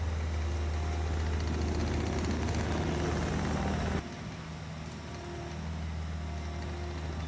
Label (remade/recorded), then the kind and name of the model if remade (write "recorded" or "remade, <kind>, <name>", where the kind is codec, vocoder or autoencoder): recorded